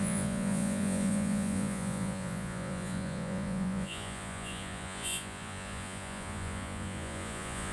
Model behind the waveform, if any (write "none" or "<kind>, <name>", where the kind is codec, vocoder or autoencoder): vocoder, Vocos